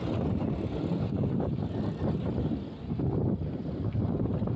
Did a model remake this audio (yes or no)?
no